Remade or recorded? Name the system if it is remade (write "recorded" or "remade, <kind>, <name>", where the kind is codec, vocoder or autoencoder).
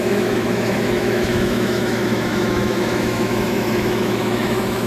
remade, autoencoder, DAC-VAE